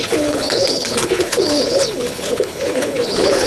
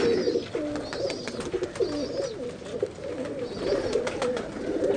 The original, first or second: second